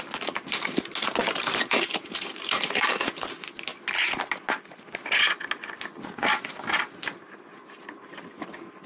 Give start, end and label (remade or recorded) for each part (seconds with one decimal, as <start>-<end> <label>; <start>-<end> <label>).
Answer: 0.0-1.2 recorded; 1.2-3.1 remade; 3.1-8.9 recorded